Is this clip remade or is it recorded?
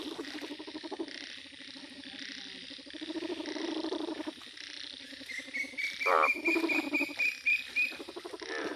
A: recorded